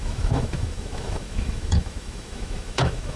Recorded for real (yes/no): no